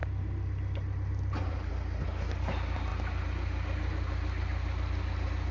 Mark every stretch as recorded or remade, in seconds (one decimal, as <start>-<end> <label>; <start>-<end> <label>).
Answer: 0.0-5.5 recorded